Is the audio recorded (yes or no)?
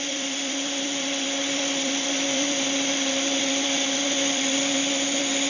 no